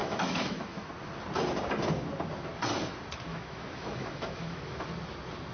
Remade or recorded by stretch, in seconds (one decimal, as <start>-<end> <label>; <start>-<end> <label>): 0.0-0.9 remade; 0.9-3.3 recorded; 3.3-4.9 remade; 4.9-5.5 recorded